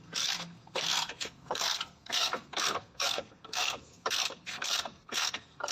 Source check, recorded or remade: remade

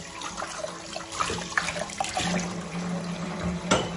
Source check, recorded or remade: recorded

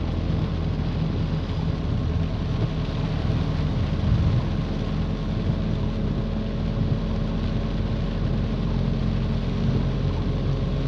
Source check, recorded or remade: recorded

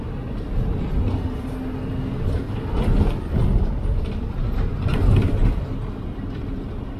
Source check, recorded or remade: recorded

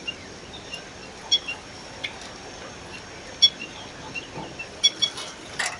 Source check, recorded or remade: recorded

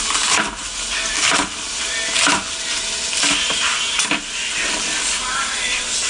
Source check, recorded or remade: recorded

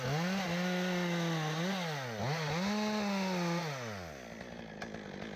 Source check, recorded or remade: recorded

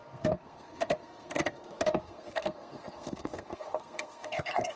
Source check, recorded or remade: remade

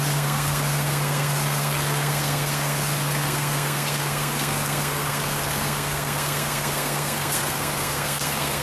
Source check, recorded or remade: remade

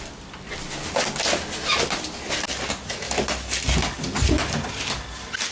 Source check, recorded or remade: recorded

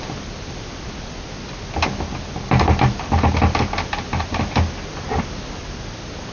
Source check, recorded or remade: recorded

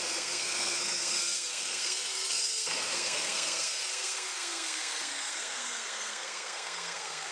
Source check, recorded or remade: remade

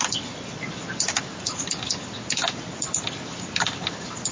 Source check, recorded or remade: recorded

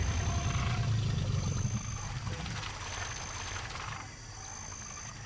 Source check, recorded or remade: recorded